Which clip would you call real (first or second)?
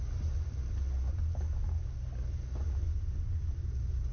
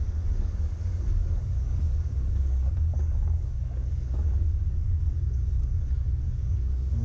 first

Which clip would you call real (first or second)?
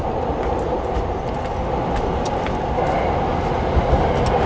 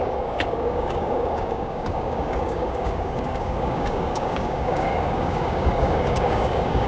first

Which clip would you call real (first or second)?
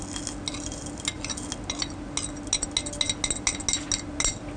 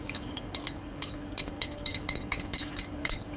first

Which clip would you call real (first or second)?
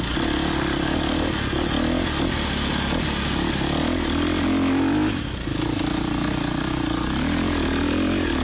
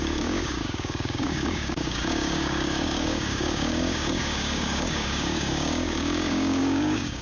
first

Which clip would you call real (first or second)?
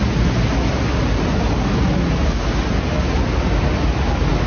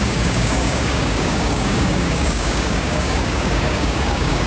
first